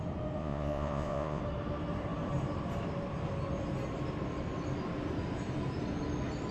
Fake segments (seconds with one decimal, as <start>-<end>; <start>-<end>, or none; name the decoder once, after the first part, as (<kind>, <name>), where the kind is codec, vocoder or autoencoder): 0.4-1.4 (vocoder, Vocos)

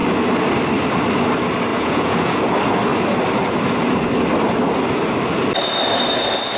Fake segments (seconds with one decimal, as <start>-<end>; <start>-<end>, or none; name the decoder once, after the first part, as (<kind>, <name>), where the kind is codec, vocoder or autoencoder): 1.7-2.4 (vocoder, Vocos)

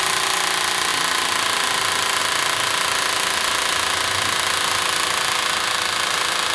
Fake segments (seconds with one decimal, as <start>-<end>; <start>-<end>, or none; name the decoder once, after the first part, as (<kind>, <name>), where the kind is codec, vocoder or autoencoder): none

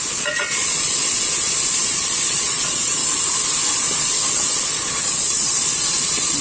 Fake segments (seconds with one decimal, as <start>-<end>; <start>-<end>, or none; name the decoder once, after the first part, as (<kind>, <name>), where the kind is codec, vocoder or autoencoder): 0.0-3.0 (vocoder, Vocos); 4.3-6.4

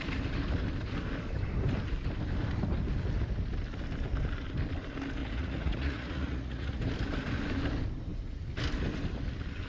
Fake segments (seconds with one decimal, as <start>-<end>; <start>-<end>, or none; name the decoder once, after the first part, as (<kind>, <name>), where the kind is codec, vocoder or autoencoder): 5.2-6.8 (vocoder, Vocos)